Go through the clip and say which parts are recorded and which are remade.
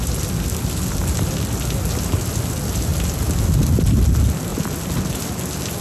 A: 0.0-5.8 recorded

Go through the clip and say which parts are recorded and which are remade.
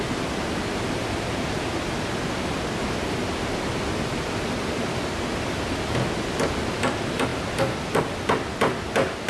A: 0.0-9.3 recorded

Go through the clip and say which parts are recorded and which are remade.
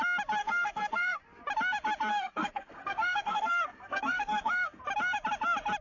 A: 0.0-0.4 recorded; 0.4-1.2 remade; 1.2-2.1 recorded; 2.1-4.8 remade; 4.8-5.8 recorded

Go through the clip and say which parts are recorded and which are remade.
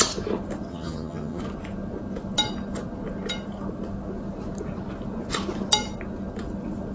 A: 0.0-0.7 recorded; 0.7-1.4 remade; 1.4-6.9 recorded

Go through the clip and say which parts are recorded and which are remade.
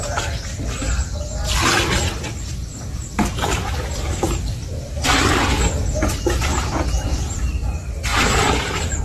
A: 0.0-2.6 recorded; 2.6-5.1 remade; 5.1-6.5 recorded; 6.5-7.7 remade; 7.7-8.1 recorded; 8.1-9.0 remade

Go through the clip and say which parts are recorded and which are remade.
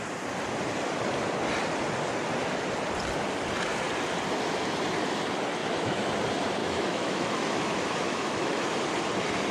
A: 0.0-5.6 recorded; 5.6-6.1 remade; 6.1-6.6 recorded; 6.6-8.6 remade; 8.6-9.5 recorded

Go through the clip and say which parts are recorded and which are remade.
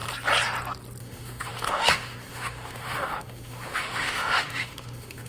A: 0.0-1.0 recorded; 1.0-5.3 remade